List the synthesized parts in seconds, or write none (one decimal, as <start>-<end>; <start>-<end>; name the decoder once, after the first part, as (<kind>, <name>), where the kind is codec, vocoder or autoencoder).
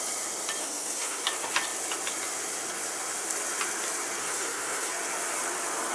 0.6-1.2 (codec, SNAC); 4.2-4.9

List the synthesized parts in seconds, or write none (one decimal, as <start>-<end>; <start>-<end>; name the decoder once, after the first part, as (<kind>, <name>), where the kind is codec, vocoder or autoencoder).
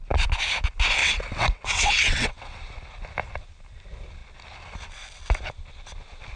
1.0-2.6 (vocoder, WaveNeXt)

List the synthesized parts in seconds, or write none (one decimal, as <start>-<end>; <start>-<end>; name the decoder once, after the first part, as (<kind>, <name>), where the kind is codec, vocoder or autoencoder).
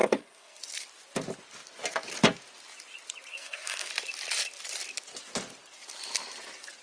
0.0-0.6 (codec, SNAC); 3.3-3.9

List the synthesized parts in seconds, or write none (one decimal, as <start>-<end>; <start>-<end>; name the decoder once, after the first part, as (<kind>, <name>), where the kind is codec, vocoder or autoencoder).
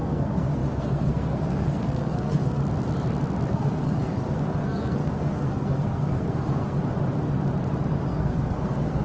0.0-2.6 (codec, SNAC); 3.5-6.8; 8.1-9.0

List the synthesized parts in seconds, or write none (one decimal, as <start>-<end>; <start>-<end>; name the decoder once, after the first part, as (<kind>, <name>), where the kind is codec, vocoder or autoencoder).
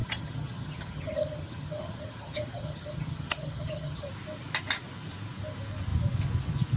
0.0-4.1 (vocoder, HiFi-GAN)